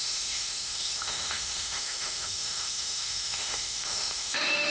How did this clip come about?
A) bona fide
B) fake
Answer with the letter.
B